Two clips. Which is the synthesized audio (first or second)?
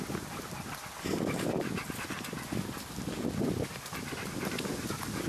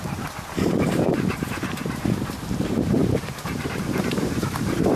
second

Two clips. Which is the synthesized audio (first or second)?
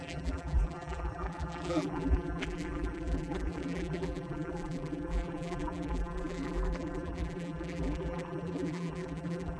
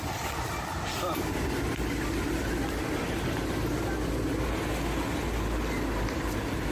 first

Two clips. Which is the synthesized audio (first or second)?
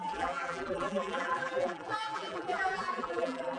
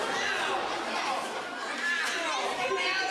first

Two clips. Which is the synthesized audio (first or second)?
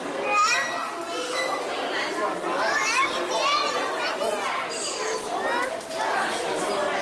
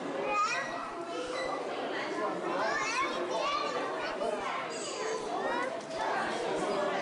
second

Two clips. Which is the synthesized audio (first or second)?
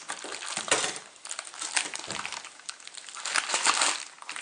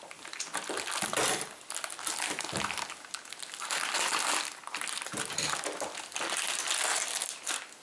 first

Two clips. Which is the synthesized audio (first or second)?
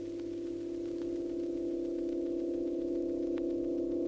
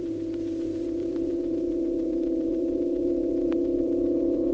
second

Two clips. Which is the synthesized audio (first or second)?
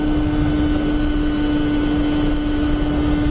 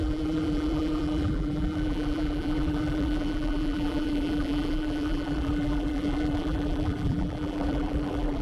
second